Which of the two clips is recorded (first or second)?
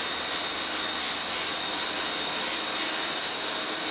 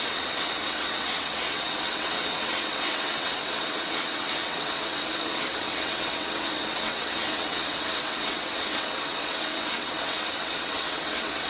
first